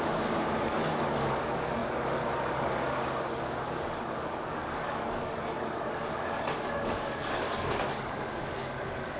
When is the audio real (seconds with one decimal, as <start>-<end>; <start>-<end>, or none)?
none